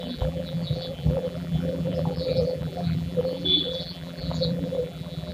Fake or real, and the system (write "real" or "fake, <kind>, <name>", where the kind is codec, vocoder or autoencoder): fake, vocoder, BigVGAN v2